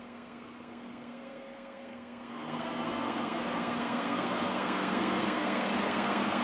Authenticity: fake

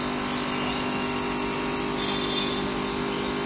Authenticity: real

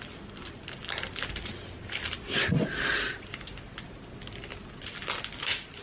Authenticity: real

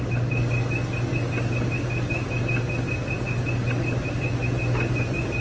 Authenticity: real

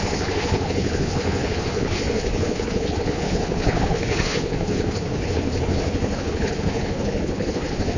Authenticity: fake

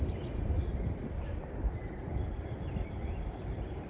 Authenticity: real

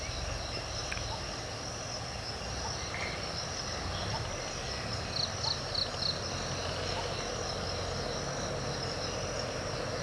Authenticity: real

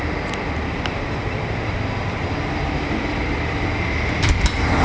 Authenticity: real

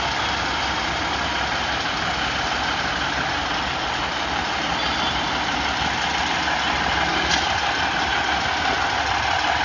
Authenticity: real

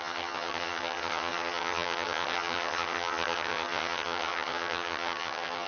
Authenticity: fake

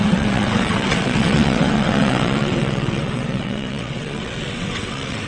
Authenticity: fake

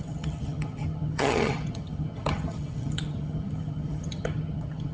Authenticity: fake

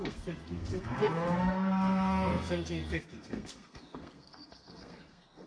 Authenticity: fake